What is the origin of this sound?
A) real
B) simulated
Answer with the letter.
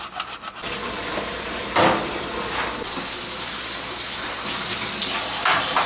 A